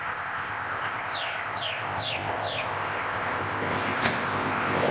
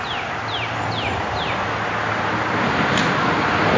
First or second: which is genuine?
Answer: second